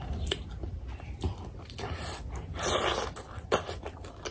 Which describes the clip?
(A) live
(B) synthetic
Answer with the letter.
A